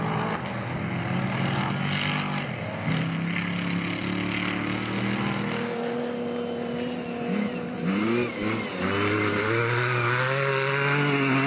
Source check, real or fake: real